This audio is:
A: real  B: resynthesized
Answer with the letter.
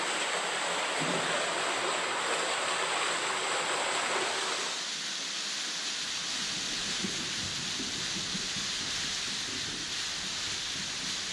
A